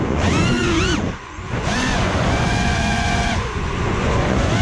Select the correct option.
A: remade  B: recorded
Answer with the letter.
A